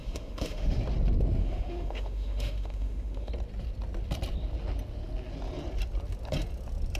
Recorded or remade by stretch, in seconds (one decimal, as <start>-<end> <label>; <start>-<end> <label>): 0.0-0.8 remade; 0.8-1.4 recorded; 1.4-3.3 remade; 3.3-7.0 recorded